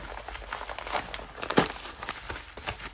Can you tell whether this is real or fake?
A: real